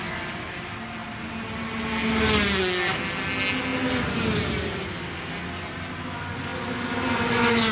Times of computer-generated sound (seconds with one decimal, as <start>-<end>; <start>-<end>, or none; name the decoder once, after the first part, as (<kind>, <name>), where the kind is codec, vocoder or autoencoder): none